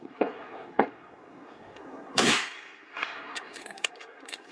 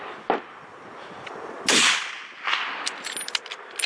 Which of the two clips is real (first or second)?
second